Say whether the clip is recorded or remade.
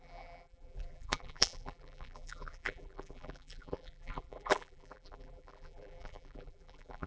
remade